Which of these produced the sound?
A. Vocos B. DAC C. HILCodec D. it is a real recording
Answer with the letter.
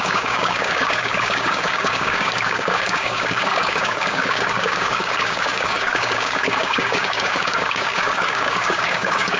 B